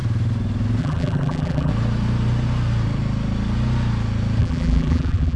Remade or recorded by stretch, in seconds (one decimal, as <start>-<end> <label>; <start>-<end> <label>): 0.0-0.8 recorded; 0.8-1.7 remade; 1.7-4.4 recorded; 4.4-5.4 remade